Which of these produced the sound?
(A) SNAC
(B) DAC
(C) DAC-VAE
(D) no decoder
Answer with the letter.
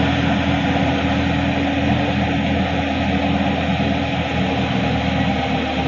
D